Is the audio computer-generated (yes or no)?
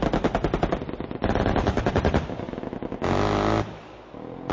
no